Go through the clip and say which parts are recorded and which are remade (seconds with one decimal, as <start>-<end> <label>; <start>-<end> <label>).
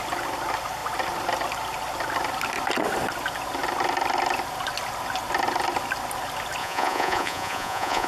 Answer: 0.0-6.6 recorded; 6.6-8.1 remade